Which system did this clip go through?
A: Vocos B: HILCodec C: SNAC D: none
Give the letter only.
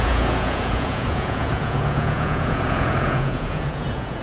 A